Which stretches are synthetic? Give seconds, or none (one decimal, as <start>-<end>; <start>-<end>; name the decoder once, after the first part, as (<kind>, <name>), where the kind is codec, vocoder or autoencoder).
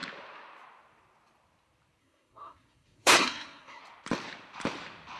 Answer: 2.0-3.8 (codec, SNAC)